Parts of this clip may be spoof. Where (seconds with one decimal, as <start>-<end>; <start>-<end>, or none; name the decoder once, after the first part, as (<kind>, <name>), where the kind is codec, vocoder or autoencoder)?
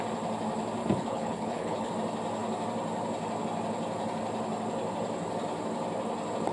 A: 0.8-1.9 (codec, HILCodec)